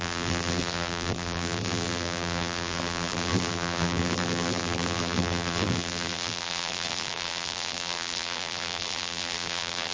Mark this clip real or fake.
fake